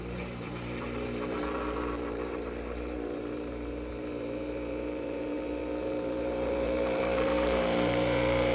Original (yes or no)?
no